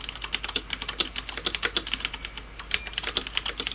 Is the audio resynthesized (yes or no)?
no